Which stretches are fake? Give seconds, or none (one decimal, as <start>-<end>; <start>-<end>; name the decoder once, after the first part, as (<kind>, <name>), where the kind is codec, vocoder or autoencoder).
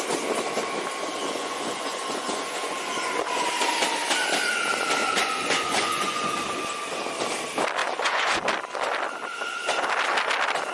1.2-3.5 (vocoder, Vocos); 5.0-6.3; 7.8-8.4